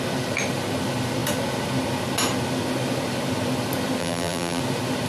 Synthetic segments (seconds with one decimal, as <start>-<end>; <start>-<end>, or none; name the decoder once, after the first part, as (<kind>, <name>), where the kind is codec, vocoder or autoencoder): 4.0-4.6 (vocoder, BigVGAN v2)